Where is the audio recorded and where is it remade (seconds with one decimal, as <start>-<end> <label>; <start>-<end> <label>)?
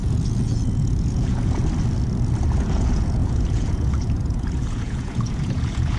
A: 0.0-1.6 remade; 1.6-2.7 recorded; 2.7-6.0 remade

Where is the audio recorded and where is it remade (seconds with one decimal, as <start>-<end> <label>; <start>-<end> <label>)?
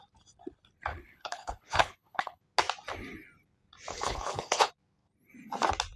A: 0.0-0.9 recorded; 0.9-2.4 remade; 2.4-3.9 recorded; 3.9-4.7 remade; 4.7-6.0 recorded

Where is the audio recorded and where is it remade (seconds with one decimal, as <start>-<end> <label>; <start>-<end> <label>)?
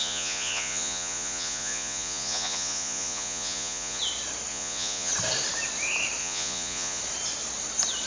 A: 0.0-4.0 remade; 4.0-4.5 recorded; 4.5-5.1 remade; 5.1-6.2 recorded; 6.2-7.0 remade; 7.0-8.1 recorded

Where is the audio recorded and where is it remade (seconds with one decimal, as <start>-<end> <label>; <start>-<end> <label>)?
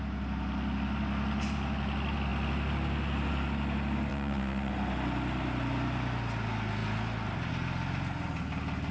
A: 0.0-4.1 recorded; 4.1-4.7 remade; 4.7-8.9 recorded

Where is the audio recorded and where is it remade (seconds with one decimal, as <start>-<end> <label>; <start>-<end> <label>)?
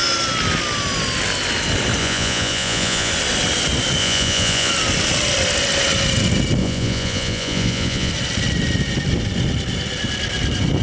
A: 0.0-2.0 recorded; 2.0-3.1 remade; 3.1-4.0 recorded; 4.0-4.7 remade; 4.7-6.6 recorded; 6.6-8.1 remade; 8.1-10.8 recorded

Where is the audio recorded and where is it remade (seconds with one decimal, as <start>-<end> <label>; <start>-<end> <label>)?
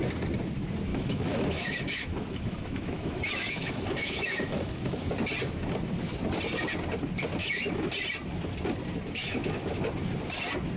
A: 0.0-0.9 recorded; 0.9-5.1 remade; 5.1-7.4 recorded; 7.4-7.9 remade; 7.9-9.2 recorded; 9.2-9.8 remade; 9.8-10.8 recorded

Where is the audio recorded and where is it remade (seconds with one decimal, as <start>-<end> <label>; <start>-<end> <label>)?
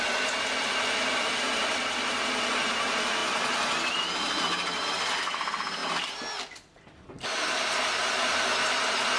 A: 0.0-0.6 recorded; 0.6-2.0 remade; 2.0-9.2 recorded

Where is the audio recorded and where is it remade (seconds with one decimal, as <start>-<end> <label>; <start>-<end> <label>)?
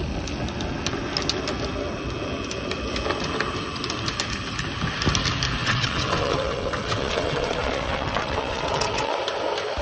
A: 0.0-5.6 recorded; 5.6-9.2 remade; 9.2-9.8 recorded